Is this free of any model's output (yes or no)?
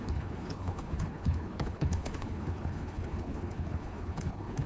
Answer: no